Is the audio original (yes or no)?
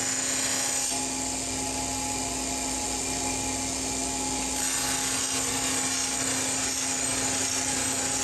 yes